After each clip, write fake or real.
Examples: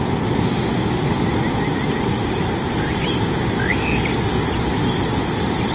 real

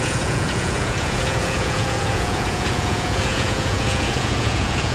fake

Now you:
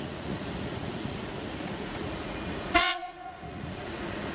fake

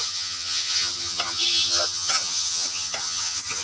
fake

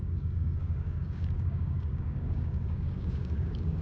fake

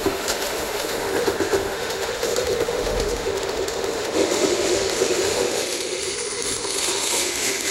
fake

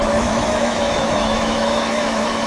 fake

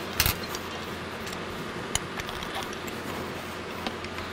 real